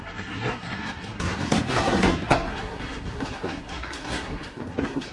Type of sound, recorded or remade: remade